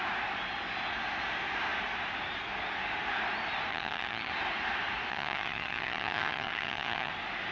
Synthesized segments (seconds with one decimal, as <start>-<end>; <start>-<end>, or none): 3.7-4.3; 5.1-7.1